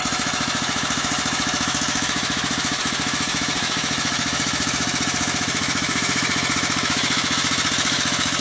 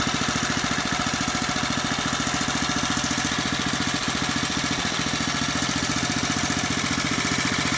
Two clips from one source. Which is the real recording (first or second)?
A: second